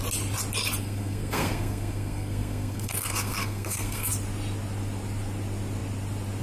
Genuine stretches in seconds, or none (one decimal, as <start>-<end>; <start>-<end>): 0.0-0.8; 4.1-6.4